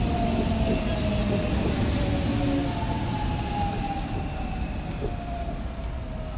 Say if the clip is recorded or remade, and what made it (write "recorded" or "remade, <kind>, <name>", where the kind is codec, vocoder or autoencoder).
recorded